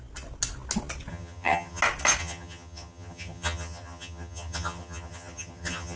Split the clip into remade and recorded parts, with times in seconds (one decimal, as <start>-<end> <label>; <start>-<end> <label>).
0.0-1.1 recorded; 1.1-1.8 remade; 1.8-2.2 recorded; 2.2-6.0 remade